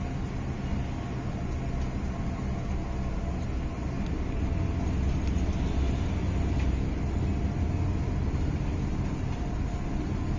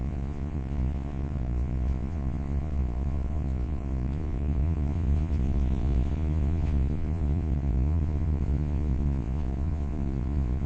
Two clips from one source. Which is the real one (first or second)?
first